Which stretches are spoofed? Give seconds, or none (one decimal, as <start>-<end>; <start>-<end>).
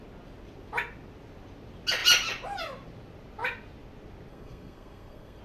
4.3-5.4